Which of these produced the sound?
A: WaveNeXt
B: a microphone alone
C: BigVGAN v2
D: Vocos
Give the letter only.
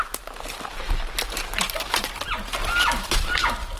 B